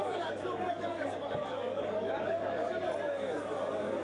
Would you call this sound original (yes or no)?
no